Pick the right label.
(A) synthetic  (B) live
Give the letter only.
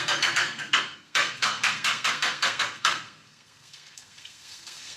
A